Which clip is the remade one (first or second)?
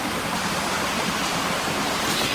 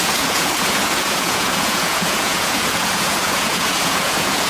second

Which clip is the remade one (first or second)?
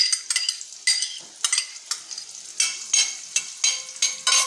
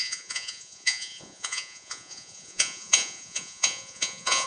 second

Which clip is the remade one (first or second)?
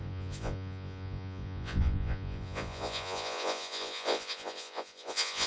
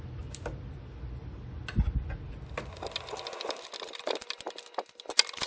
first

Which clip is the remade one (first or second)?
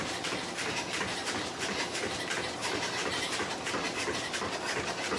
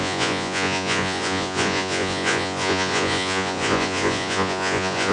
second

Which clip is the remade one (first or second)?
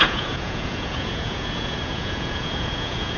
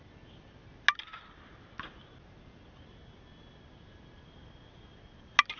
first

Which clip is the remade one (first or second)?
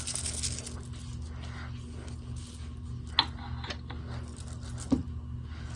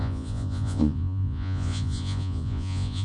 second